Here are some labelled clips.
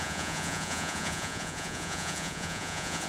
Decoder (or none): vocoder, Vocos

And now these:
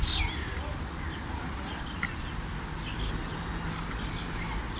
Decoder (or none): none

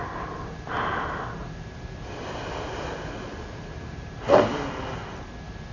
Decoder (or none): none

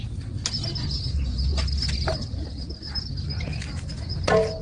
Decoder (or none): none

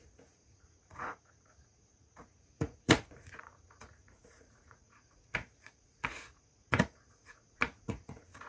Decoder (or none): vocoder, Vocos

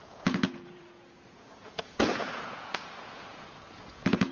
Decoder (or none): vocoder, Vocos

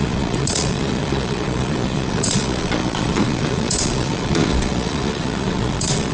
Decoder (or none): vocoder, Vocos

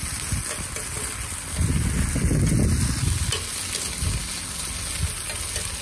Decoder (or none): none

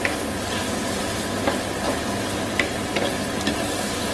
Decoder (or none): none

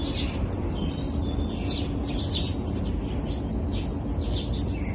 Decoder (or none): none